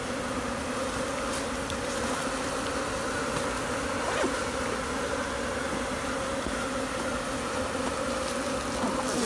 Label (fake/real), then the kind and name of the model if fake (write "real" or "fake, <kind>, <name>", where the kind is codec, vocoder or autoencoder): real